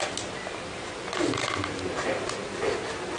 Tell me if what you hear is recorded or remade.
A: recorded